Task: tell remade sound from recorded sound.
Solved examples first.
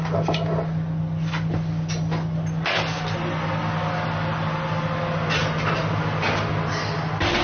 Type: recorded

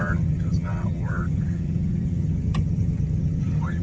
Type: remade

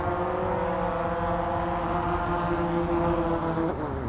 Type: recorded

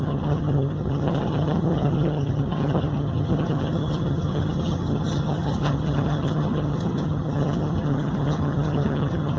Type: remade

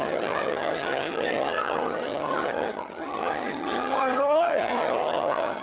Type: remade